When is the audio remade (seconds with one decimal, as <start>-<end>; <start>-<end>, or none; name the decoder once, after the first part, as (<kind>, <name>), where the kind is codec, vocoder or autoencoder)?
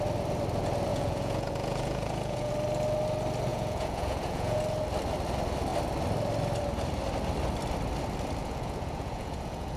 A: 0.9-2.5 (vocoder, Vocos); 3.5-4.6; 8.4-9.8